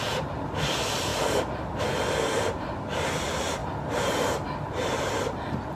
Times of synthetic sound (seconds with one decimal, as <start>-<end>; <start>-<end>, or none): 0.0-5.8